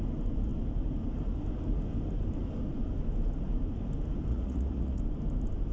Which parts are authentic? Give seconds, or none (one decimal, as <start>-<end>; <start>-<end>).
0.0-4.3; 5.0-5.7